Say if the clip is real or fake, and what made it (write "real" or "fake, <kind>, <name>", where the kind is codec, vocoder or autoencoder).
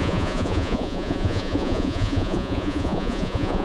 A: fake, vocoder, Vocos